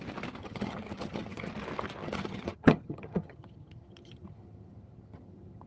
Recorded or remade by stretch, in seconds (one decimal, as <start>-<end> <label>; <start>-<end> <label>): 0.0-0.4 recorded; 0.4-1.5 remade; 1.5-2.0 recorded; 2.0-5.7 remade